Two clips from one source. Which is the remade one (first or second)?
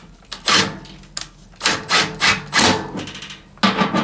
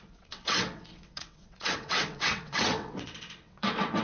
second